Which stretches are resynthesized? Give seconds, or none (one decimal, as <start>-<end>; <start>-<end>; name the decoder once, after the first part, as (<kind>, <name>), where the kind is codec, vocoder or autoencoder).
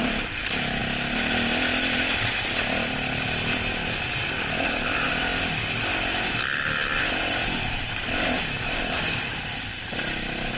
0.0-0.8 (vocoder, BigVGAN v2); 4.3-5.3; 7.0-10.6